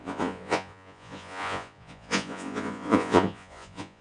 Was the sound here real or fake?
fake